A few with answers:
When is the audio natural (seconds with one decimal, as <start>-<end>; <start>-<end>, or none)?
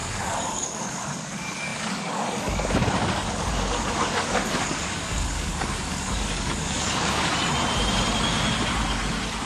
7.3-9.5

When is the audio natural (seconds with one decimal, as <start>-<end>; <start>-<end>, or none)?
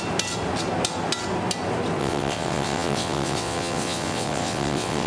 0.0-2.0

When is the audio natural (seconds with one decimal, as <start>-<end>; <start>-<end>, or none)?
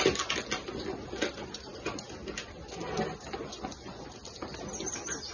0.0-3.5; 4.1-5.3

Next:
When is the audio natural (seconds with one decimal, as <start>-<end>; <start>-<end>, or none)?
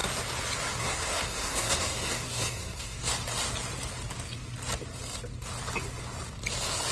0.0-0.8; 3.1-6.9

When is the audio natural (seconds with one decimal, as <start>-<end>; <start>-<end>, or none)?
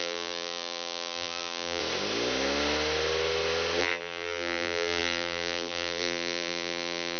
1.8-3.8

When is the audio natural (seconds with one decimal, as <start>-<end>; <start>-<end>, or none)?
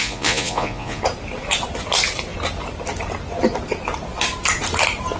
1.0-5.2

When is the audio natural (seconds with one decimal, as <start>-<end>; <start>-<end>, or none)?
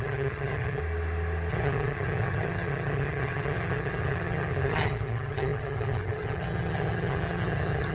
0.8-1.5